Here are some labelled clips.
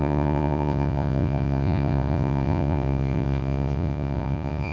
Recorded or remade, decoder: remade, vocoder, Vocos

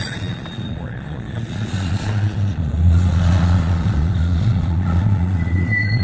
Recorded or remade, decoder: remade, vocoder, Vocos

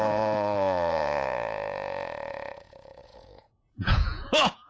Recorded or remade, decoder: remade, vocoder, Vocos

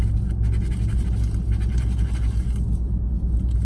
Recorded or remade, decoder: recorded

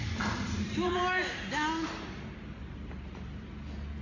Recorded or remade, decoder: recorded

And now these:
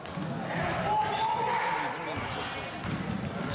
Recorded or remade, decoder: recorded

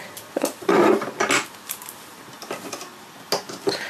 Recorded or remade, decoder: recorded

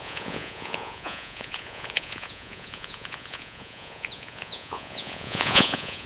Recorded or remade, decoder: remade, vocoder, Vocos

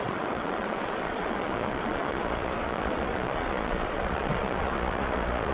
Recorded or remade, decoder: remade, vocoder, Vocos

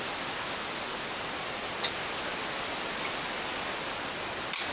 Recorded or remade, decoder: recorded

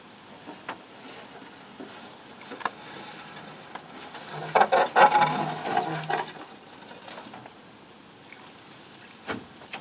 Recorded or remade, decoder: recorded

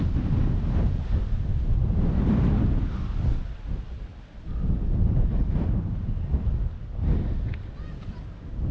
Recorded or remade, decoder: recorded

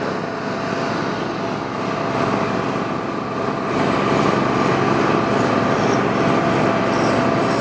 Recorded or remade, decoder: recorded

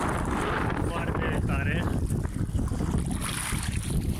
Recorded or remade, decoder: recorded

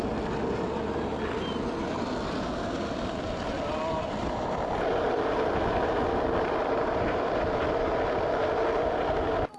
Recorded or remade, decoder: recorded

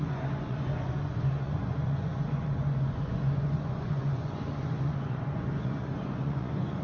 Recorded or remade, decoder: remade, vocoder, Vocos